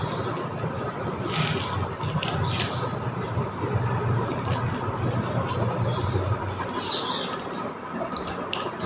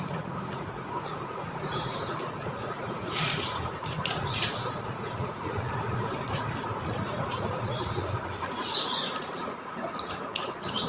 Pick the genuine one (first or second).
first